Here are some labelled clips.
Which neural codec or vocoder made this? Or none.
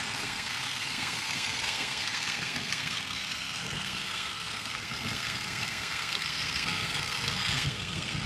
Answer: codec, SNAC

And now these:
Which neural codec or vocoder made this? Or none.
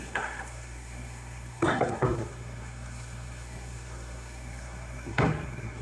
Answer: codec, SNAC